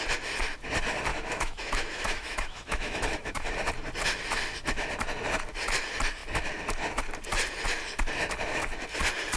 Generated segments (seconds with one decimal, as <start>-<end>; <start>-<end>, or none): 1.1-3.5

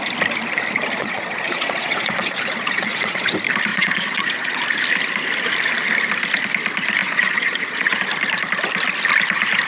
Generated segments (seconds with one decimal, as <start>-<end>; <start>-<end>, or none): 1.0-3.3; 3.7-4.6; 7.0-8.0

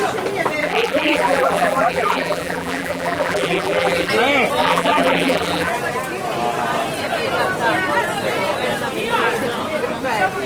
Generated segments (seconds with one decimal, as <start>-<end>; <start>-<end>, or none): 0.6-4.1; 4.6-5.7

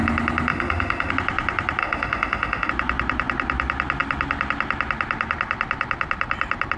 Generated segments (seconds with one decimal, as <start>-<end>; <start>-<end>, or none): 0.5-1.1; 1.8-2.7

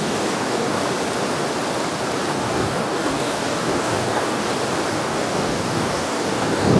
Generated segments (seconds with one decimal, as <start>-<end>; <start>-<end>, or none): 0.0-0.8; 2.3-4.4; 4.9-6.8

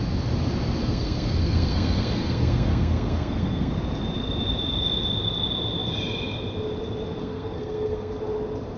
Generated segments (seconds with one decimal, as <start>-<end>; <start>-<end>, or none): 0.8-3.7; 7.2-8.2